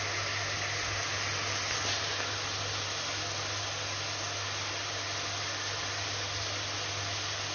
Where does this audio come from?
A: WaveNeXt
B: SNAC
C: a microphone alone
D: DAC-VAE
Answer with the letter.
C